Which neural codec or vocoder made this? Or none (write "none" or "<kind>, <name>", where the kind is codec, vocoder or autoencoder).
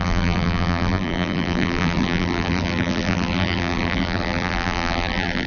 vocoder, BigVGAN v2